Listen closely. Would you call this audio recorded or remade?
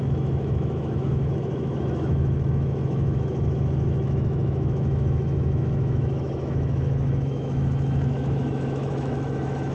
remade